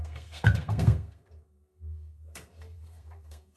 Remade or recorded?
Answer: remade